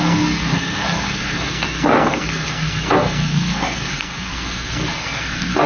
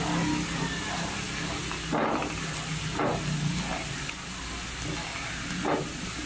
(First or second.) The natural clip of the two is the second